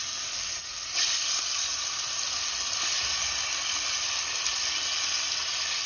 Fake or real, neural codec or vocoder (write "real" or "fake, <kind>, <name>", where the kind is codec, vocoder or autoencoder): real